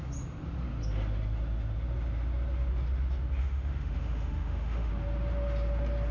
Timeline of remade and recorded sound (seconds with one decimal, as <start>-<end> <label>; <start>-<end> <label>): 0.0-3.4 recorded; 3.4-4.9 remade; 4.9-6.1 recorded